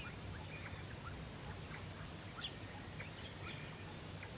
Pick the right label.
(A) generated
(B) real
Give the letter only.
B